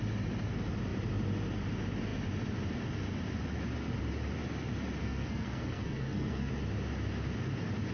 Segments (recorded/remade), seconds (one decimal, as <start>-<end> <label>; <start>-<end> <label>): 0.0-5.0 recorded; 5.0-6.5 remade; 6.5-7.9 recorded